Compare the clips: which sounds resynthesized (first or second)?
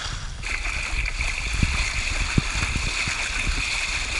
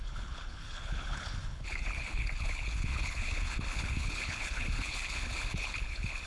second